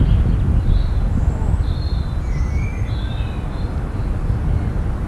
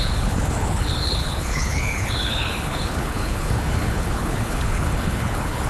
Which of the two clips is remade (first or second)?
second